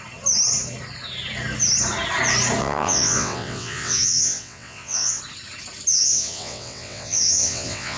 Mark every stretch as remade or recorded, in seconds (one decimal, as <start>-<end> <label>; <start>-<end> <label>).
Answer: 0.0-2.6 recorded; 2.6-5.2 remade; 5.2-5.9 recorded; 5.9-8.0 remade